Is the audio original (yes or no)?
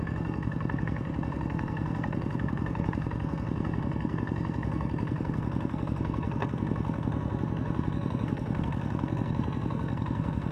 no